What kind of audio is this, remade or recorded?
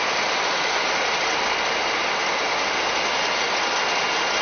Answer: recorded